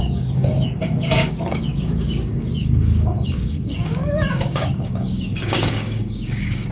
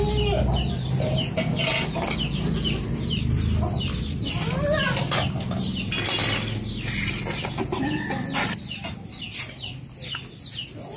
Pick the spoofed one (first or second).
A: first